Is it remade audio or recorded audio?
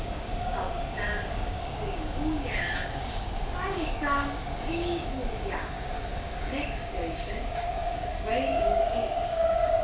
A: remade